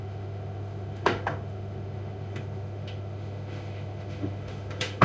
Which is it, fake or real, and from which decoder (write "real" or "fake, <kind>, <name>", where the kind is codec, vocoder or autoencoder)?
fake, autoencoder, DAC-VAE